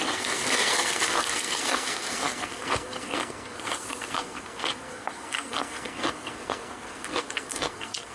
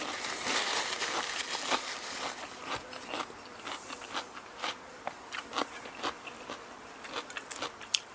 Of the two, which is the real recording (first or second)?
second